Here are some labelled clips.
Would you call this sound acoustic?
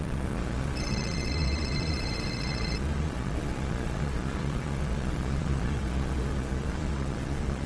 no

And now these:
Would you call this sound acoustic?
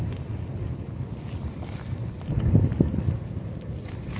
yes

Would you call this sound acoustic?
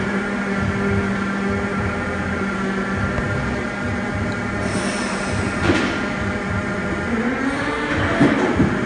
yes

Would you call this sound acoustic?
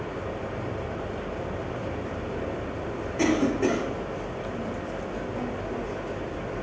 yes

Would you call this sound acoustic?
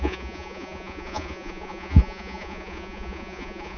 no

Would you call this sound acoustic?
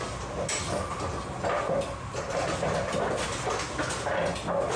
yes